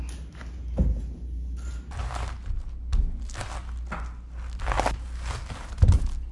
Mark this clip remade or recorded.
recorded